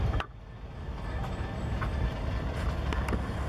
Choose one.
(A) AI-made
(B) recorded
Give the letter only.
B